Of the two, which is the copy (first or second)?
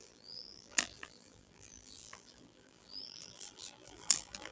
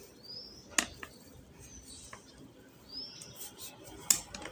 first